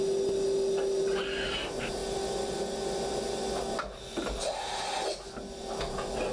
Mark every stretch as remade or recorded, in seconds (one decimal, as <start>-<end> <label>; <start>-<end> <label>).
0.0-6.3 recorded